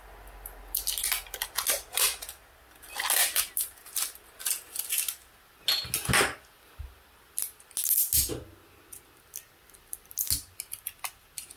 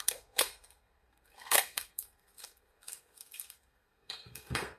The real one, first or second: first